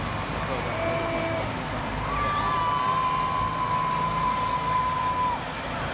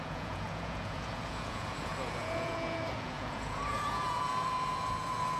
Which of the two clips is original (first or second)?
first